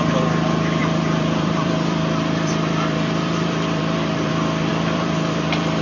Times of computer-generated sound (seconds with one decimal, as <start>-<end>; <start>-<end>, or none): 0.8-4.3; 4.7-5.8